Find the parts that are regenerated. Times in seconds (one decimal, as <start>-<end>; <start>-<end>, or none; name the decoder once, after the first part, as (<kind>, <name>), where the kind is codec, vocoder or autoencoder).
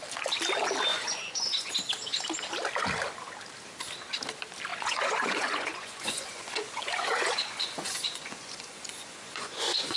0.9-1.7 (vocoder, Vocos); 4.7-10.0